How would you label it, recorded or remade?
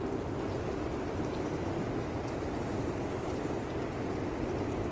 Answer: recorded